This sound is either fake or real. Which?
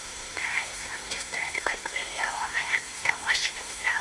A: fake